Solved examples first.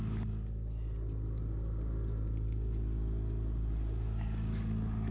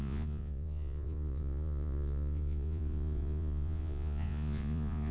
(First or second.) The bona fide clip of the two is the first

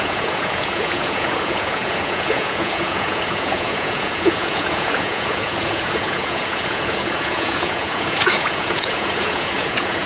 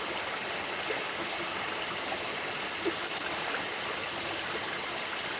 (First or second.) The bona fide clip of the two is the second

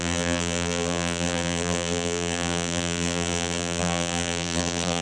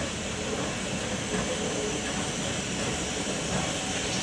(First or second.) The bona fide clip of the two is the second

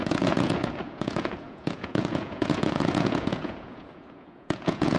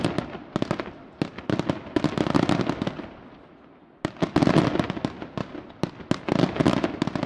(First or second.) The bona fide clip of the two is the second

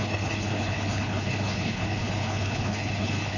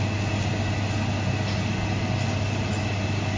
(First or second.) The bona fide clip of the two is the second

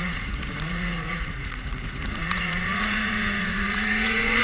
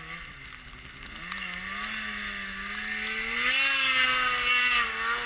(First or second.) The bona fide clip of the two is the second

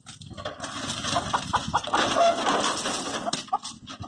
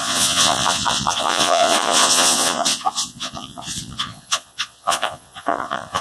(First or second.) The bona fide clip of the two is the first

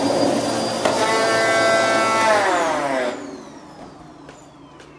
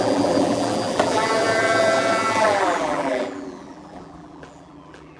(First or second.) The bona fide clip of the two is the first